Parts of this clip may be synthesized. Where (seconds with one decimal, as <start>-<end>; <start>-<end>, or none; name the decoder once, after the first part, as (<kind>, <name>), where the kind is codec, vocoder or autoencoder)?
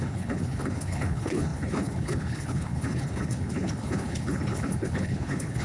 0.0-5.6 (codec, HILCodec)